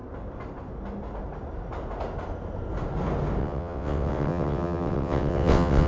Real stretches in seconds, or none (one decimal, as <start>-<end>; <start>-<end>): 0.0-3.4